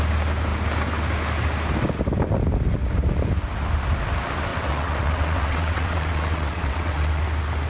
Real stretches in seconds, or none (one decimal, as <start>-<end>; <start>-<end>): 0.0-4.5; 7.2-7.7